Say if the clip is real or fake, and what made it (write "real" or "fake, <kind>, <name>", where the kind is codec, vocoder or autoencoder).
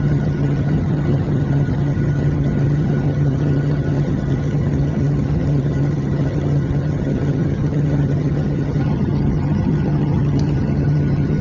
fake, vocoder, HiFi-GAN